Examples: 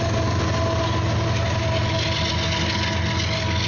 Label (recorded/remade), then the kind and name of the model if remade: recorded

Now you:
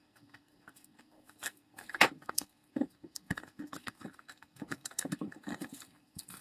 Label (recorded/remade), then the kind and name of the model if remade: remade, codec, SNAC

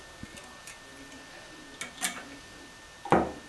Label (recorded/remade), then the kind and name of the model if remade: recorded